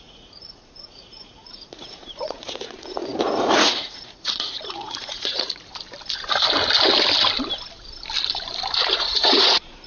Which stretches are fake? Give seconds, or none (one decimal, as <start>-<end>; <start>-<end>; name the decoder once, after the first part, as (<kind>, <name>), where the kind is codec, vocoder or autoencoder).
0.0-5.7 (vocoder, Vocos); 8.9-9.9